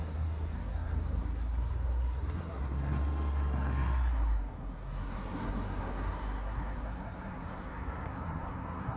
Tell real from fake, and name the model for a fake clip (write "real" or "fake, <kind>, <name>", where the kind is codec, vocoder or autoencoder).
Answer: fake, codec, SNAC